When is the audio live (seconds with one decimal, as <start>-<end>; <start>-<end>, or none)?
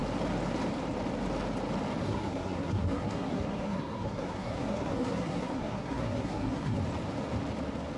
0.0-2.0; 6.8-8.0